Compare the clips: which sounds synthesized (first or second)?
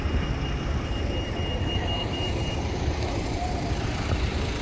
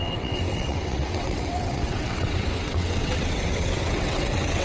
second